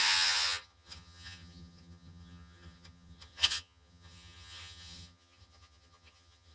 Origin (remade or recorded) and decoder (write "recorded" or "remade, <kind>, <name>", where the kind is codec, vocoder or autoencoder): remade, vocoder, HiFi-GAN